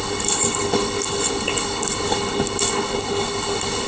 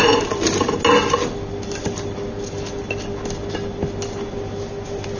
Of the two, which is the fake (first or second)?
first